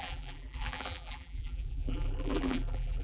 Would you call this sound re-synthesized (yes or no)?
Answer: yes